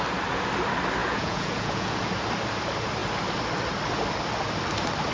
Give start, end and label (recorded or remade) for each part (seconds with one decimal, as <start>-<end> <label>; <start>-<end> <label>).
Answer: 0.0-1.0 recorded; 1.0-2.1 remade; 2.1-5.1 recorded

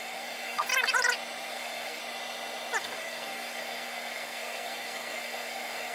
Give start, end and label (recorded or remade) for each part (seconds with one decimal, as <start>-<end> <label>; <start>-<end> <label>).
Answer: 0.0-0.7 remade; 0.7-1.5 recorded; 1.5-2.0 remade; 2.0-2.8 recorded; 2.8-5.9 remade

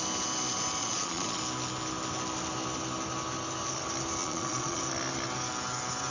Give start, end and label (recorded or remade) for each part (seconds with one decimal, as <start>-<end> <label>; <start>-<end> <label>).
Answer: 0.0-0.8 recorded; 0.8-1.4 remade; 1.4-4.2 recorded; 4.2-4.8 remade; 4.8-6.1 recorded

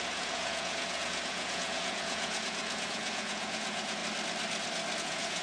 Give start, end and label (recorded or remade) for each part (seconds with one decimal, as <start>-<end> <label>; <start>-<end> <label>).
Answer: 0.0-4.0 remade; 4.0-5.0 recorded; 5.0-5.4 remade